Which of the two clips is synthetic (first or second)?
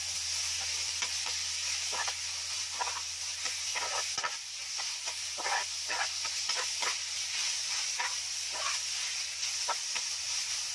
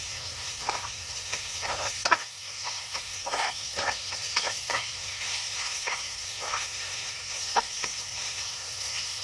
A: second